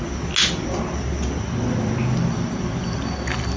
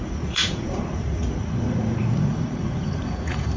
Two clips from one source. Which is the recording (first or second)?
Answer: first